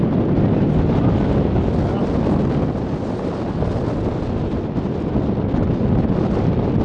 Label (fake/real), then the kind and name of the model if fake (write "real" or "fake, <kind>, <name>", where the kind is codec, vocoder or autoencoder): real